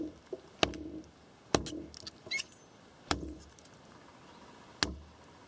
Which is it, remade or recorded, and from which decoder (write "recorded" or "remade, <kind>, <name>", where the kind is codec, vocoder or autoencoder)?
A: recorded